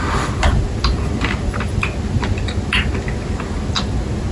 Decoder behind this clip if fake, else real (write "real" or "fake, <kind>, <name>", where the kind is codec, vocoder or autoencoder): real